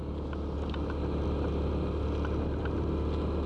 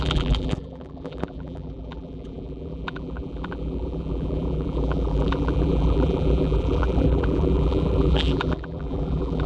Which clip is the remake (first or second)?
second